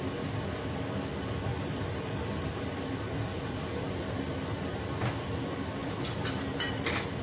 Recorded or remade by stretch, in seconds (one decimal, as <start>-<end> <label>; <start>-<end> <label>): 0.0-1.5 recorded; 1.5-3.9 remade; 3.9-5.8 recorded; 5.8-6.4 remade; 6.4-7.2 recorded